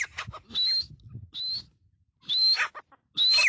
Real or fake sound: real